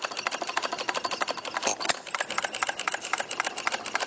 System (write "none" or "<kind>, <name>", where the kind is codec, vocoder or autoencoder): none